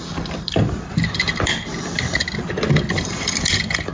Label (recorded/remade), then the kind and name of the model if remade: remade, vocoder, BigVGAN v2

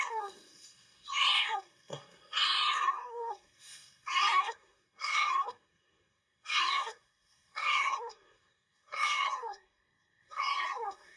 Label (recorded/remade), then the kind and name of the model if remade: remade, codec, SNAC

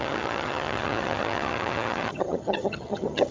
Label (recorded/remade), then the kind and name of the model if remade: remade, vocoder, HiFi-GAN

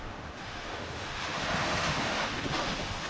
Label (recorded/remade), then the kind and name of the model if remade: remade, autoencoder, DAC-VAE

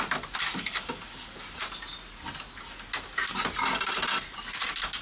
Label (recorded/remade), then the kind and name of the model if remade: recorded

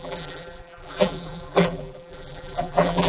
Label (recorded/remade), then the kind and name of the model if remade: remade, vocoder, BigVGAN v2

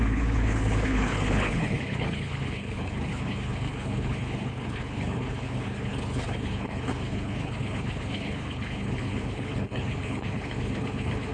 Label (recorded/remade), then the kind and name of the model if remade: remade, codec, HILCodec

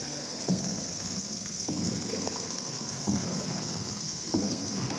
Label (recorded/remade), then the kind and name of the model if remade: remade, codec, SNAC